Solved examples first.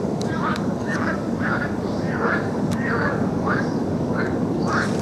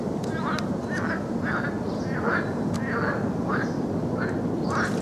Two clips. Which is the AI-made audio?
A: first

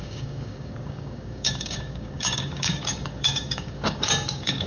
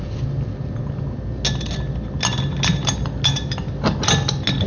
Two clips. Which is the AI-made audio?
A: first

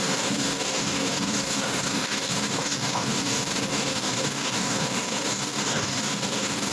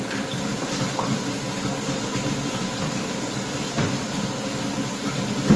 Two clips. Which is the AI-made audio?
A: first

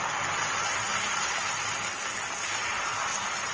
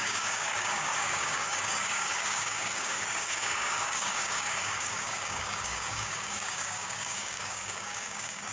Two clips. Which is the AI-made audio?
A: second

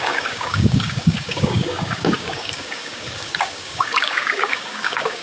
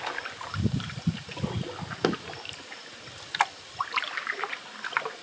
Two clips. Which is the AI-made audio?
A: first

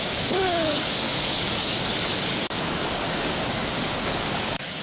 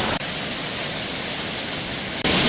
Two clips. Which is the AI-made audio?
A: first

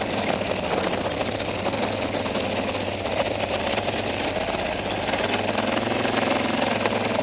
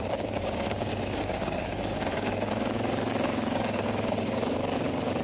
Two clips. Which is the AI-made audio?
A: second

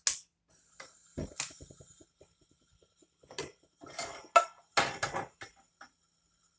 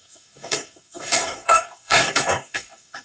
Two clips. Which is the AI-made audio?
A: second